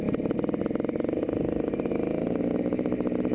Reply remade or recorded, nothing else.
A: recorded